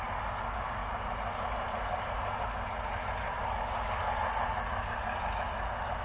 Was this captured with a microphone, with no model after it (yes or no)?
yes